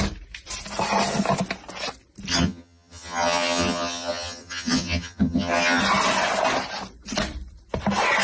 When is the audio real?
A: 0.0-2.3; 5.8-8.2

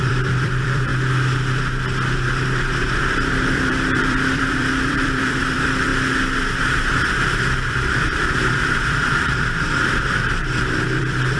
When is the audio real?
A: 0.9-2.8; 5.9-6.6